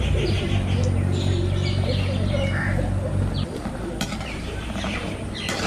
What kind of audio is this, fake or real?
real